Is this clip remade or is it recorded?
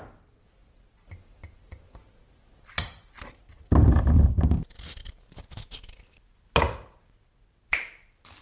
recorded